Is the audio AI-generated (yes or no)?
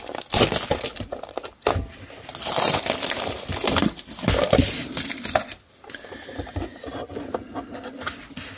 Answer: no